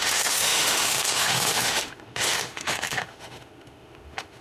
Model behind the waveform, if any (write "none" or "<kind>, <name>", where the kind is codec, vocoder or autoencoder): autoencoder, DAC-VAE